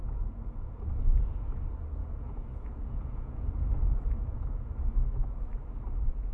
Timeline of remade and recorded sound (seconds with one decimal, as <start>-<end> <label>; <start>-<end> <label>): 0.0-0.9 remade; 0.9-2.0 recorded; 2.0-4.4 remade; 4.4-6.3 recorded